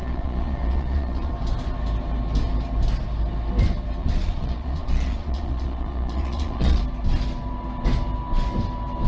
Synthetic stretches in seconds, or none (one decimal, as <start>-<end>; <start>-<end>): 0.0-1.3; 4.0-6.8